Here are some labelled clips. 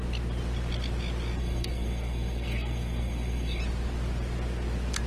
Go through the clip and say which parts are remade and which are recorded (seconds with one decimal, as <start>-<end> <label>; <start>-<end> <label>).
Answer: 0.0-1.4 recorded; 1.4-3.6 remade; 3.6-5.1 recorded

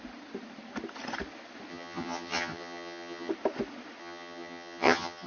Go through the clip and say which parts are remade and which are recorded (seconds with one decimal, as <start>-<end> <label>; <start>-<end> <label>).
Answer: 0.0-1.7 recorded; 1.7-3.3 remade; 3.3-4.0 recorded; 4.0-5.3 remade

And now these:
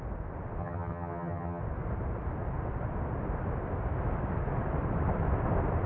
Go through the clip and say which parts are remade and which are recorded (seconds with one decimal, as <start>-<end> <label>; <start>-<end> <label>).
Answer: 0.0-0.6 recorded; 0.6-1.6 remade; 1.6-5.9 recorded